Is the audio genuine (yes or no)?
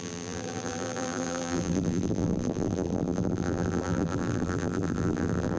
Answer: no